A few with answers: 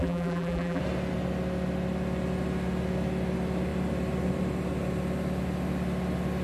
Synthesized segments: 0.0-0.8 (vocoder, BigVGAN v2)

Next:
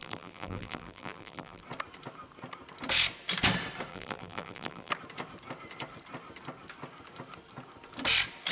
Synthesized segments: 0.0-1.6 (vocoder, BigVGAN v2); 3.9-4.9

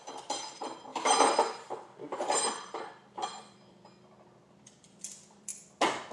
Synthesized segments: 0.0-5.5 (vocoder, BigVGAN v2)

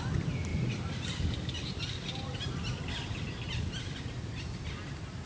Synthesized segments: 0.5-3.7 (vocoder, BigVGAN v2)

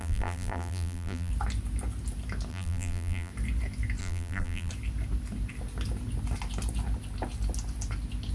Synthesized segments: 0.0-1.3 (vocoder, BigVGAN v2); 2.5-3.3; 4.0-4.7

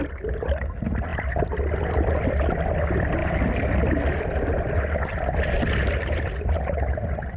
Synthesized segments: 3.2-3.7 (vocoder, BigVGAN v2)

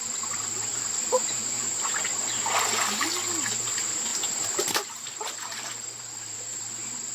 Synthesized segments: 0.7-1.7 (vocoder, BigVGAN v2); 2.1-3.1; 4.1-6.6

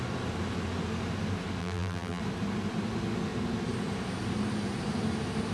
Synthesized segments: 1.6-2.2 (vocoder, BigVGAN v2)